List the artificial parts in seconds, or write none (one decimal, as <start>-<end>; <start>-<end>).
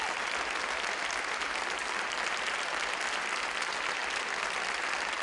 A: none